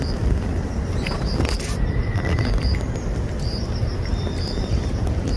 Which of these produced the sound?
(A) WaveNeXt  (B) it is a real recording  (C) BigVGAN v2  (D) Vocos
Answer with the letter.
C